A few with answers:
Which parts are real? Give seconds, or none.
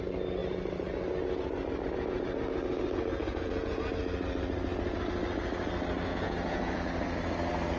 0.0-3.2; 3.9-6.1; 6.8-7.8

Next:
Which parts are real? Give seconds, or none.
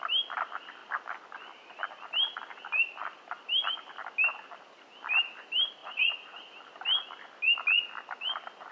0.0-5.8; 6.4-8.7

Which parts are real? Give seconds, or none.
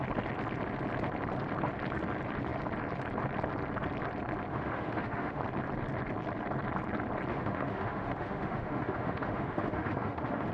0.0-4.5; 5.4-7.3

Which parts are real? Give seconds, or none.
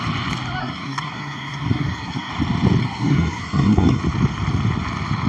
0.0-0.6; 2.3-2.8; 4.0-5.3